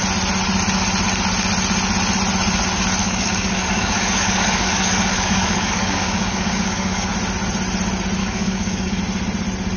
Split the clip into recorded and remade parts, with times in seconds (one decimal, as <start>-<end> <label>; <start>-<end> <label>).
0.0-3.0 recorded; 3.0-7.1 remade; 7.1-8.2 recorded; 8.2-9.0 remade; 9.0-9.8 recorded

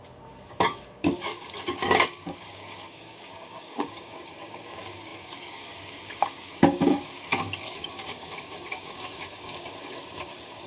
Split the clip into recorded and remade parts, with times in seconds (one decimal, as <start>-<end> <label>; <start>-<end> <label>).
0.0-10.7 remade

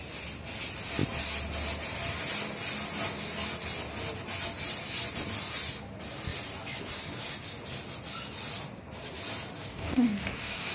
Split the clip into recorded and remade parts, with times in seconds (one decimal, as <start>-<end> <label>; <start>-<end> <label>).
0.0-9.7 recorded; 9.7-10.7 remade

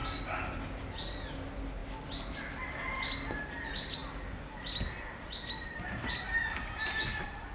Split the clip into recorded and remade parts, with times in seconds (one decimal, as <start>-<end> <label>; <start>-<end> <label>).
0.0-7.5 recorded

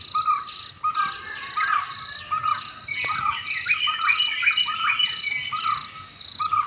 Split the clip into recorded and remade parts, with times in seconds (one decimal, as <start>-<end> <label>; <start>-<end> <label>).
0.0-6.7 recorded

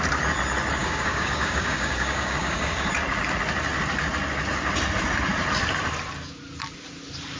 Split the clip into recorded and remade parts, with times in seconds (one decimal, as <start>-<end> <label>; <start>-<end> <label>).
0.0-0.8 recorded; 0.8-2.9 remade; 2.9-7.4 recorded

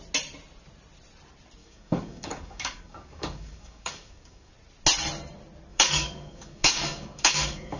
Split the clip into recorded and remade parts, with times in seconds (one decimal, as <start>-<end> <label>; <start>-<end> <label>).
0.0-1.6 recorded; 1.6-4.5 remade; 4.5-5.7 recorded; 5.7-7.8 remade

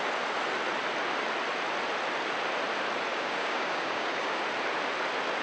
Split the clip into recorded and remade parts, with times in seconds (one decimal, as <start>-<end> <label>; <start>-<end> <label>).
0.0-3.1 recorded; 3.1-4.4 remade; 4.4-5.4 recorded